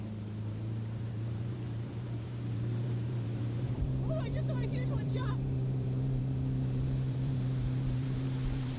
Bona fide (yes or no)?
no